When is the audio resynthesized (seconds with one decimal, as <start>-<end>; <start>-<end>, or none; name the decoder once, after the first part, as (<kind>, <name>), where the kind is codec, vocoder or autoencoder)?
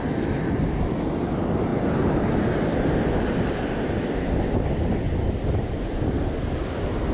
none